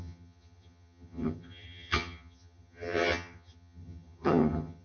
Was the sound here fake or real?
fake